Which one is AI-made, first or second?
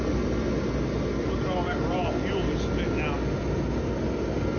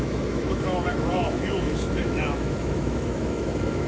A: second